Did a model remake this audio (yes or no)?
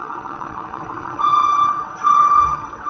yes